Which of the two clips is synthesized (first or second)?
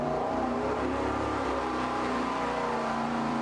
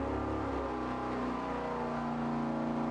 first